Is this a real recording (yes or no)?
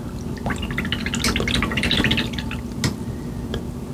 yes